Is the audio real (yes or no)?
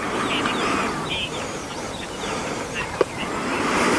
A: no